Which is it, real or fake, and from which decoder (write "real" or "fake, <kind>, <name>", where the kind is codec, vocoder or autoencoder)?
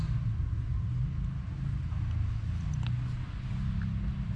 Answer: real